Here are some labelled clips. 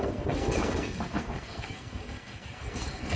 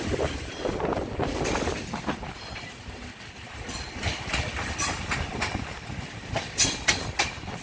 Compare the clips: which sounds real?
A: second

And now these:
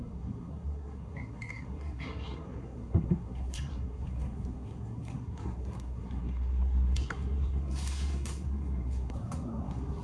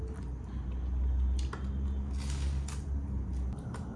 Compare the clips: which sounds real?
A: second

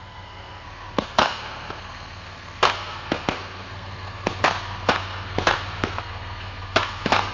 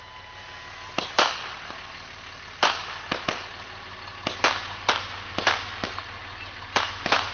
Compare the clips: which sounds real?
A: second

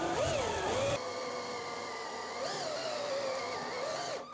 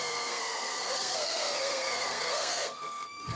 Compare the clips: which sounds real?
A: first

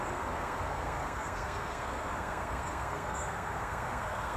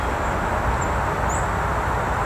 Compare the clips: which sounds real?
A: second